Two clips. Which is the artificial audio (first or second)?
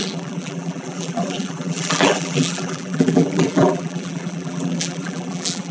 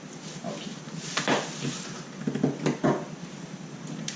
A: first